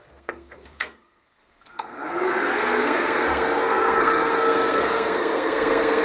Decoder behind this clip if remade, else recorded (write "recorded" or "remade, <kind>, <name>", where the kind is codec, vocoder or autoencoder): remade, codec, SNAC